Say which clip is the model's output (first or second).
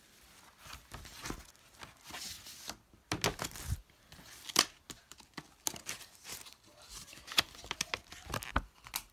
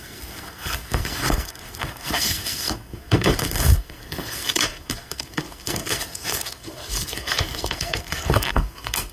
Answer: second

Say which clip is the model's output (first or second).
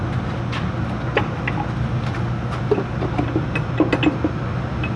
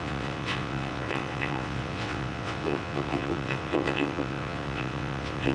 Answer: second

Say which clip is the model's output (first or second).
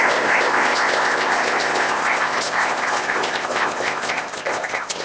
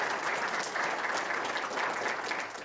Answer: first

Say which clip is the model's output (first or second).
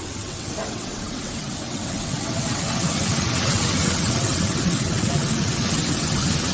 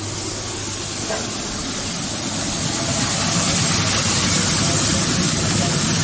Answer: first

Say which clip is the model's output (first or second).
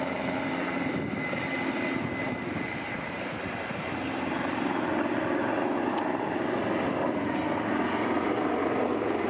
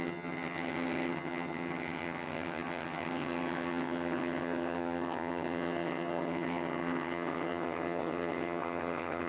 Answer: second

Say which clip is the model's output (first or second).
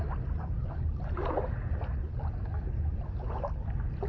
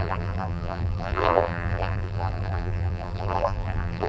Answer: second